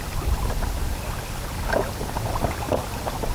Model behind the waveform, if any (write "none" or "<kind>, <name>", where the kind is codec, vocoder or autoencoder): none